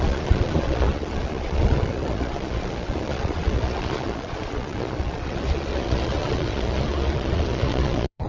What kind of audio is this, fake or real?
fake